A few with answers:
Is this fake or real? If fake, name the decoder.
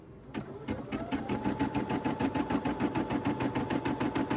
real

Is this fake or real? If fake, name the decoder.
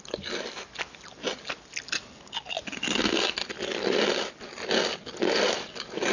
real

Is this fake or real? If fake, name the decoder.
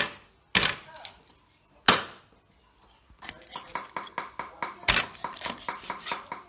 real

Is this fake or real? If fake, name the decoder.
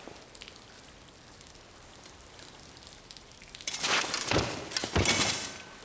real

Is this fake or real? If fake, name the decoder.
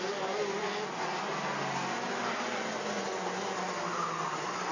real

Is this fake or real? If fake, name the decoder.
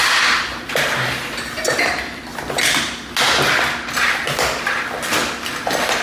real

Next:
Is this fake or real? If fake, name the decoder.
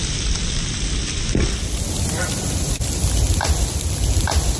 real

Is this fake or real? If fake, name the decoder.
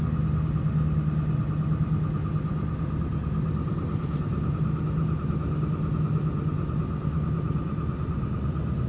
real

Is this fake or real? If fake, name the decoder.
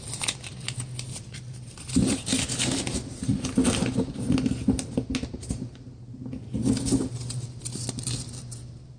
real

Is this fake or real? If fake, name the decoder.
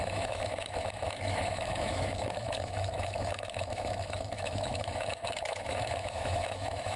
fake, autoencoder, DAC-VAE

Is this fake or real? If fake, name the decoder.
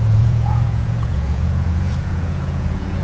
fake, vocoder, Vocos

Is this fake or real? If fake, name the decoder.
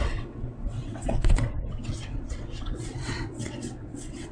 fake, vocoder, WaveNeXt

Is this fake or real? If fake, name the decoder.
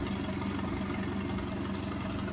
real